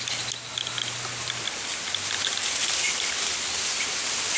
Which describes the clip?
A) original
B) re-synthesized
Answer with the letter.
A